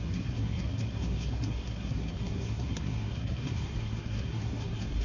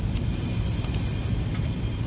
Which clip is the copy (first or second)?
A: first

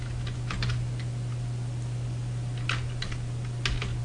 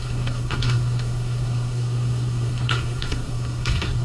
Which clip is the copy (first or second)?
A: second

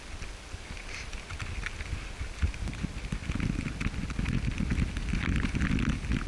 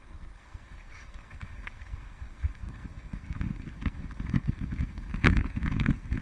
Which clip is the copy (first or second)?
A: second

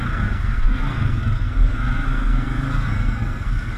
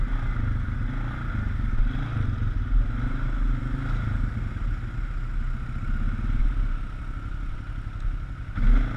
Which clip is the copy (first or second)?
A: first